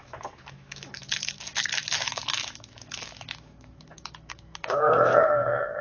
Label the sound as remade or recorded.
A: remade